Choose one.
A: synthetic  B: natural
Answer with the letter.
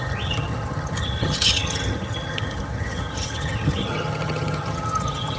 A